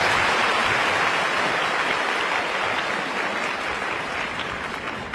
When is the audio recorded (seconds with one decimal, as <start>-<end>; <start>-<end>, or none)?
0.0-5.1